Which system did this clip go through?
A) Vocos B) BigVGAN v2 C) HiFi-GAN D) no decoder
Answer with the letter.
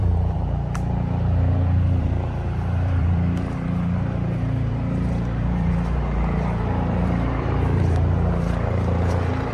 B